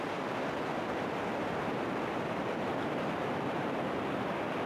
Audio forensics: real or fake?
real